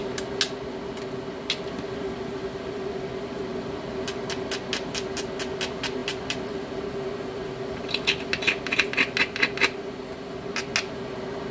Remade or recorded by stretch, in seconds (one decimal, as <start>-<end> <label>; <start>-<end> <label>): 0.0-11.5 recorded